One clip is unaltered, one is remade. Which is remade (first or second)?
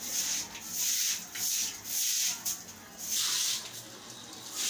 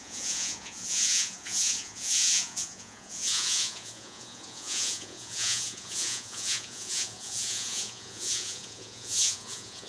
second